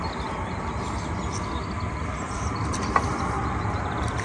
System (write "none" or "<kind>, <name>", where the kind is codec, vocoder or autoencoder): none